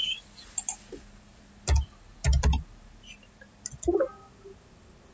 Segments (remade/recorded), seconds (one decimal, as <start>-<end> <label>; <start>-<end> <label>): 0.0-5.1 recorded